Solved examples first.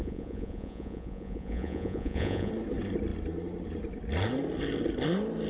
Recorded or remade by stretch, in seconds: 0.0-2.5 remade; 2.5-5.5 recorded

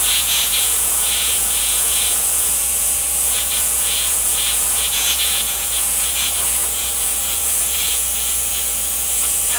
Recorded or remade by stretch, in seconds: 0.0-9.6 remade

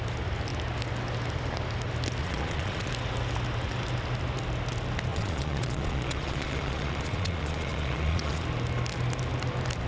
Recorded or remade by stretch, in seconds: 0.0-2.2 recorded; 2.2-2.9 remade; 2.9-5.1 recorded; 5.1-8.4 remade; 8.4-9.9 recorded

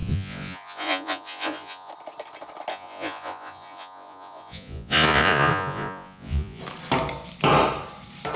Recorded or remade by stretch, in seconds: 0.0-1.9 remade; 1.9-2.7 recorded; 2.7-6.6 remade; 6.6-8.4 recorded

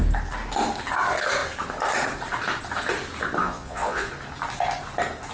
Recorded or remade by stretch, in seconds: 0.0-3.4 recorded; 3.4-4.1 remade; 4.1-5.3 recorded